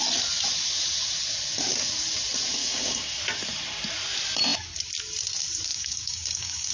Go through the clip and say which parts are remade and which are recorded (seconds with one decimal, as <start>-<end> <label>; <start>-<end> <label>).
0.0-2.6 recorded; 2.6-3.2 remade; 3.2-5.7 recorded; 5.7-6.7 remade